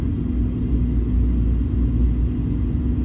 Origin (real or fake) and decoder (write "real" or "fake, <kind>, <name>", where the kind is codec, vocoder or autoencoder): real